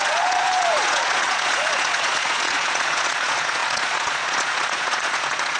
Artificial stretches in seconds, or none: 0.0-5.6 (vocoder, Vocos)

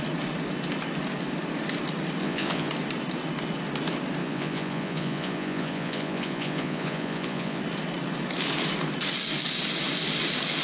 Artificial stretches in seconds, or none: 2.2-2.7 (vocoder, Vocos); 4.2-7.6

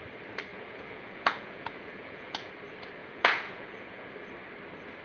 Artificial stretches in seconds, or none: 0.5-2.5 (vocoder, Vocos); 3.0-4.1

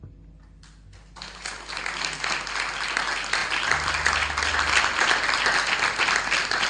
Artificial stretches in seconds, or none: none

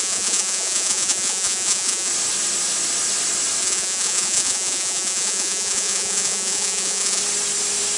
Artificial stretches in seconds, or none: 0.0-2.1 (vocoder, Vocos); 3.6-7.2

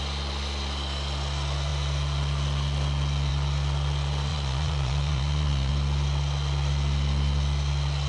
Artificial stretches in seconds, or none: 4.3-5.7 (vocoder, Vocos)

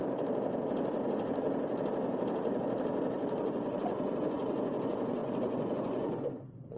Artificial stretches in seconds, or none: 3.4-6.8 (vocoder, Vocos)